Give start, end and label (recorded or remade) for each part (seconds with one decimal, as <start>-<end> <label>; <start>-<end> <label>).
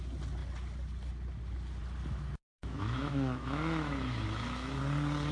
0.0-2.4 recorded; 2.4-4.8 remade; 4.8-5.3 recorded